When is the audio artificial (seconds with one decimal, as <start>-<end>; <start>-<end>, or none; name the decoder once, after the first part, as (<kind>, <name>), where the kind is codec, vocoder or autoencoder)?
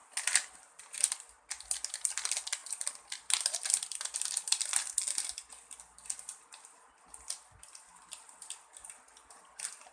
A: none